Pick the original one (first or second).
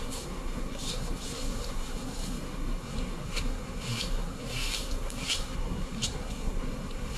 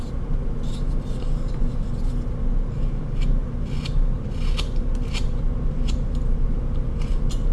second